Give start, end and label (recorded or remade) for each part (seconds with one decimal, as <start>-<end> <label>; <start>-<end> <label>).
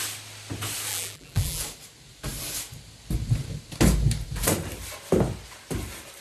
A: 0.0-0.9 recorded; 0.9-1.6 remade; 1.6-6.2 recorded